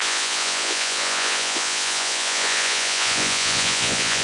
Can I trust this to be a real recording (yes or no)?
no